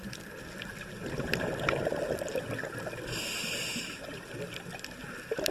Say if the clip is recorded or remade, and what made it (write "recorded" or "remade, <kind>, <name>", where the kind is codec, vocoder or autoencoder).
recorded